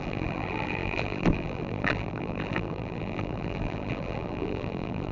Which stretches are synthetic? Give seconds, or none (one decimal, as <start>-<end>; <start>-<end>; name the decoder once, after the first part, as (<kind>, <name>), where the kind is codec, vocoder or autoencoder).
0.0-5.1 (vocoder, BigVGAN v2)